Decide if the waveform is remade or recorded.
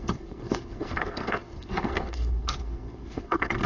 remade